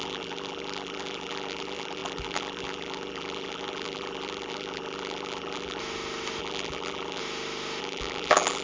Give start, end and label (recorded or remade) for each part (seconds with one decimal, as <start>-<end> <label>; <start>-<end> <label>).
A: 0.0-5.8 remade; 5.8-6.4 recorded; 6.4-7.2 remade; 7.2-7.8 recorded; 7.8-8.6 remade